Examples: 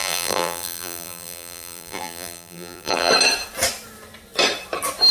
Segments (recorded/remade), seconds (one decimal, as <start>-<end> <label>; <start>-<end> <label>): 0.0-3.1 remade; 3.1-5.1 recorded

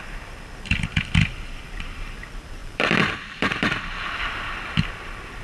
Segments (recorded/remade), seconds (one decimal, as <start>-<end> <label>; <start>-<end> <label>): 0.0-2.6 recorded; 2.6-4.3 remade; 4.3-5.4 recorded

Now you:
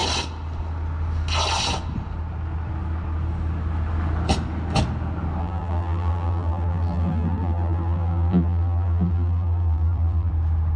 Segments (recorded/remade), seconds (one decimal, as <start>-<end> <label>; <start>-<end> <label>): 0.0-5.4 recorded; 5.4-10.3 remade; 10.3-10.8 recorded

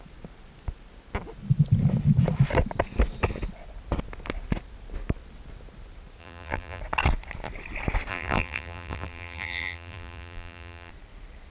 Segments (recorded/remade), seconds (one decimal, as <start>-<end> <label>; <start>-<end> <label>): 0.0-6.2 recorded; 6.2-6.8 remade; 6.8-8.1 recorded; 8.1-10.9 remade; 10.9-11.5 recorded

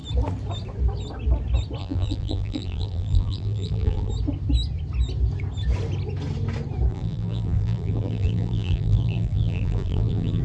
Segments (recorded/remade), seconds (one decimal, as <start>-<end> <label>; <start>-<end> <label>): 0.0-1.8 recorded; 1.8-4.1 remade; 4.1-6.9 recorded; 6.9-10.4 remade